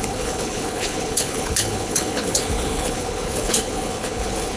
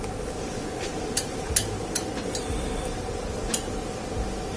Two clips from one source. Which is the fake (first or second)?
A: first